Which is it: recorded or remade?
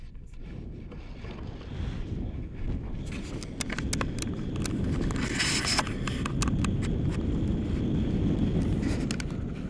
recorded